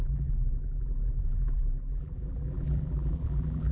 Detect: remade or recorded remade